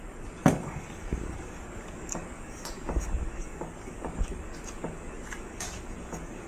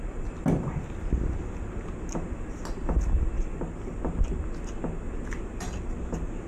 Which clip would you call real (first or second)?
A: second